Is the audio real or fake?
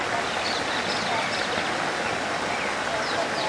real